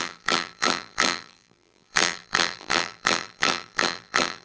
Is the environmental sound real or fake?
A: fake